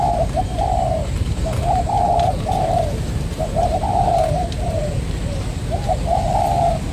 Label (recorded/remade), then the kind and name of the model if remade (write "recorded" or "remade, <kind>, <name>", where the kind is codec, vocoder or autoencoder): remade, vocoder, BigVGAN v2